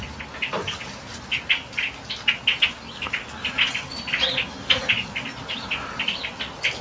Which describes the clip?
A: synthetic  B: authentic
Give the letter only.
B